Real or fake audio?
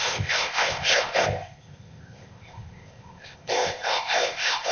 fake